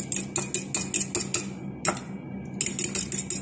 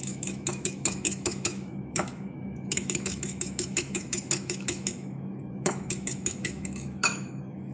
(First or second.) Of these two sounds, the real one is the first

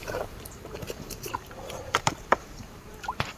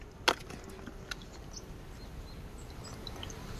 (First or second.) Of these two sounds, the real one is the second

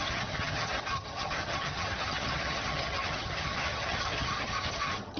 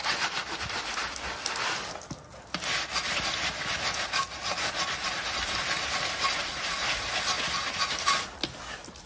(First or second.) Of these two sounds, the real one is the second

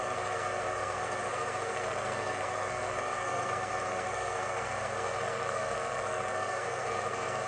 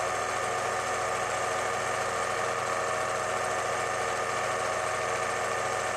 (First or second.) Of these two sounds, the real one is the second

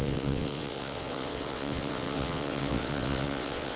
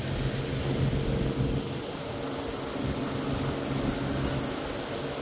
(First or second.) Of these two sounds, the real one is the second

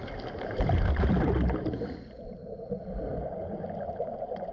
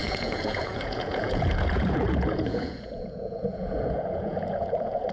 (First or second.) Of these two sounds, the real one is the first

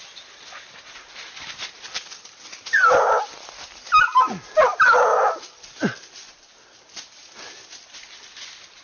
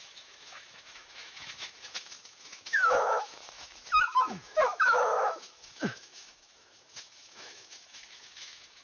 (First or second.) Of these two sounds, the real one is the first